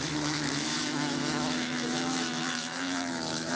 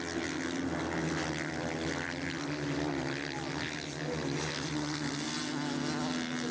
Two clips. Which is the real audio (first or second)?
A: second